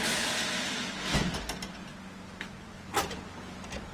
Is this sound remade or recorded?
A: recorded